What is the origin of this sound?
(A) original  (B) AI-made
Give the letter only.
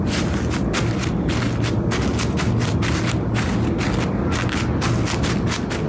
A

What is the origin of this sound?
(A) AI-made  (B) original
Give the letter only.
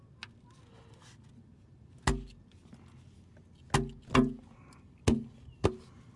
B